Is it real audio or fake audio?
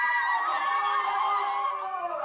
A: fake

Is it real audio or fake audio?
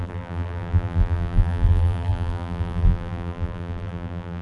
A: fake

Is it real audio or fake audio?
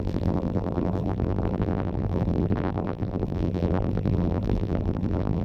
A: fake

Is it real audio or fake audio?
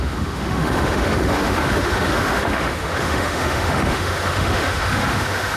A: fake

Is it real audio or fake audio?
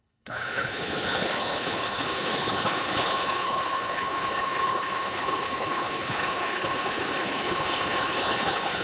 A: fake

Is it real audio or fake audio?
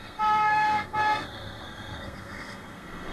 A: fake